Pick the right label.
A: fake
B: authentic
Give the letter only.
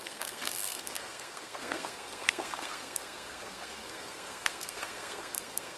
A